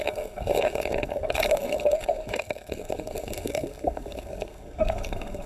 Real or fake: fake